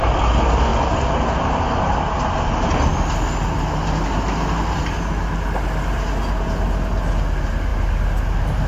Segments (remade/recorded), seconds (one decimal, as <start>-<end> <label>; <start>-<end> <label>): 0.0-8.7 recorded